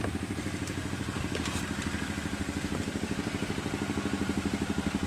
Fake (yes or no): yes